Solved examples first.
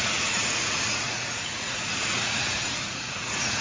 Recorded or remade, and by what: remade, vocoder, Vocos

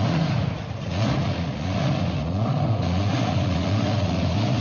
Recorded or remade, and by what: remade, vocoder, Vocos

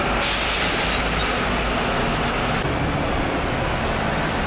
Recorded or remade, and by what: recorded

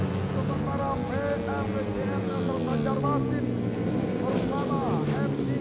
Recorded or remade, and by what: recorded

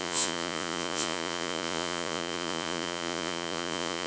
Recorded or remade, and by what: remade, vocoder, Vocos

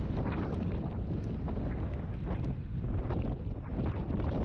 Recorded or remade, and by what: recorded